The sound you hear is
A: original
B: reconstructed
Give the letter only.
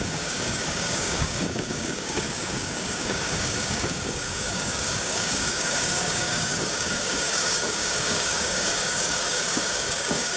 B